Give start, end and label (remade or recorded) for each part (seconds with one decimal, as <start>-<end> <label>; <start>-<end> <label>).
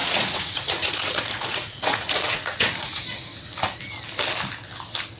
0.0-3.0 remade; 3.0-5.2 recorded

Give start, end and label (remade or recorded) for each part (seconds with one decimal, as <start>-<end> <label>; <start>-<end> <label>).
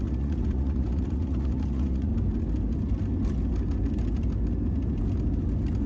0.0-2.1 remade; 2.1-5.9 recorded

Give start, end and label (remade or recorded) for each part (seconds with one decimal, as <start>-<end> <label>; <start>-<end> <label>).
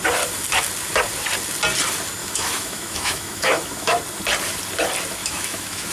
0.0-2.2 recorded; 2.2-4.0 remade; 4.0-5.2 recorded; 5.2-5.9 remade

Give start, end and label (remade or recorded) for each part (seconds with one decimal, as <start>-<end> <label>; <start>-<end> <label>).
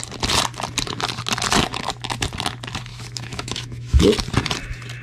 0.0-2.9 recorded; 2.9-4.1 remade; 4.1-5.0 recorded